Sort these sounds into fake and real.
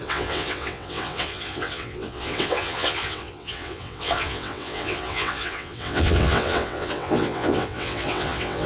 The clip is fake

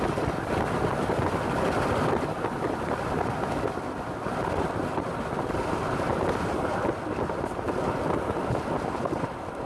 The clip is real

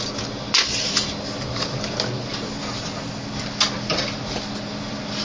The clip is real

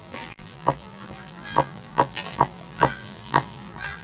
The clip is fake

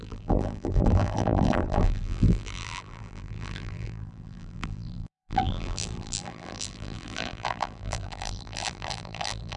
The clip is fake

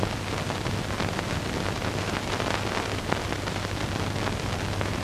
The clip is real